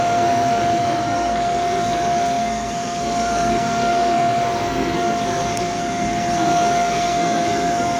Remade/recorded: remade